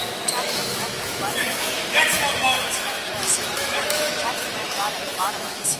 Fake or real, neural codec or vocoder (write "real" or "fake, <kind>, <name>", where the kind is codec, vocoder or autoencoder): fake, autoencoder, DAC-VAE